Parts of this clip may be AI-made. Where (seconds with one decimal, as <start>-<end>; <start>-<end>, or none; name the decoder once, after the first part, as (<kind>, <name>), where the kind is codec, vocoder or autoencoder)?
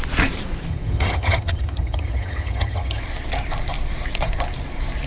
0.7-3.0 (vocoder, HiFi-GAN)